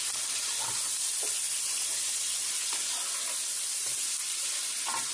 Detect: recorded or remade recorded